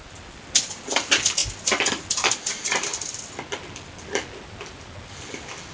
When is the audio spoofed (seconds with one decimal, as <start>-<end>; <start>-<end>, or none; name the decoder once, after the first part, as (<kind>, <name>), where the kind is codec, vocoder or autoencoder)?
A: none